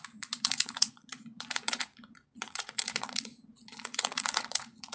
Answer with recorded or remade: remade